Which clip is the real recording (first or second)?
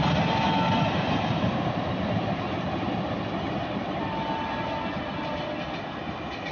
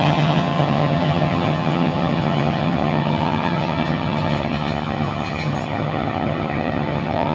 first